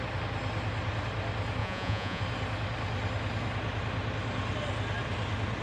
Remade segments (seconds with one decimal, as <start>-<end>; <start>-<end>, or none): 1.6-2.2